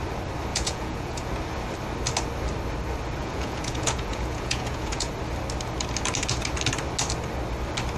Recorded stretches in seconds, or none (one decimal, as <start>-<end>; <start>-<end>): 0.0-0.5; 1.3-3.2; 5.1-8.0

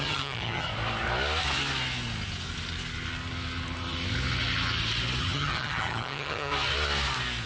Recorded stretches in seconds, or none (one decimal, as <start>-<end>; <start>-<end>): 0.7-5.2; 6.5-7.5

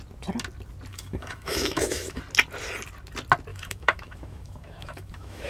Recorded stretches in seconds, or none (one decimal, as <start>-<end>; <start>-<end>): 0.0-0.9; 2.2-3.5

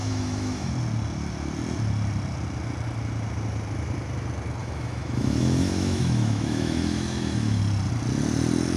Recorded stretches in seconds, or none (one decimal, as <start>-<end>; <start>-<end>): 0.7-4.6; 7.6-8.8